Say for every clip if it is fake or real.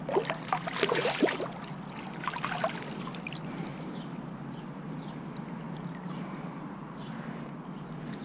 real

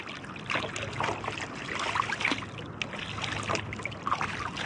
real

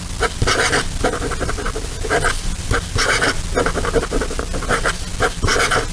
real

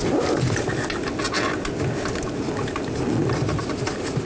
real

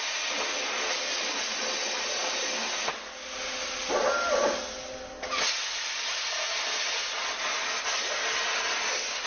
real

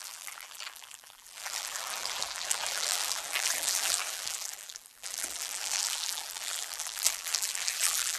fake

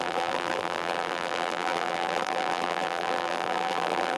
fake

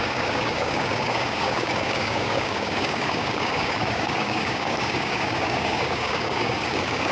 fake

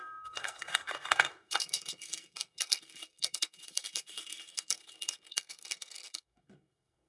fake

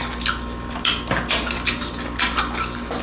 real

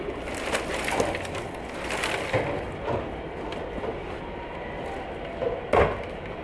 real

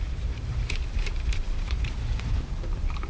fake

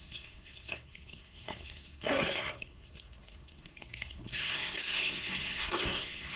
fake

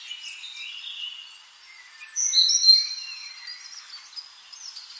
real